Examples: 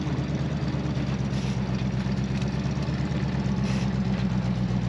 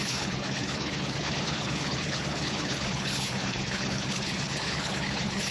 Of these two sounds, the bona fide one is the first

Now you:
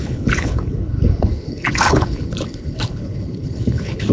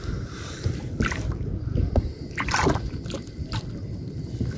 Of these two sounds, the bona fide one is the second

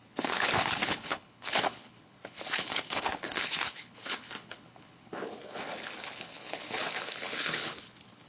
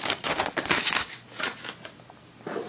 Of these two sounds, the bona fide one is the second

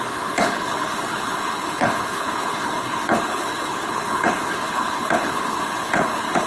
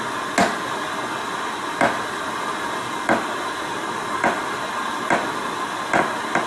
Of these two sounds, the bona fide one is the second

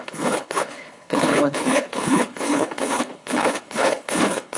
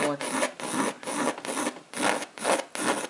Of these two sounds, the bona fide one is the second